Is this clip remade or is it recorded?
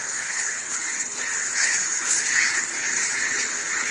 remade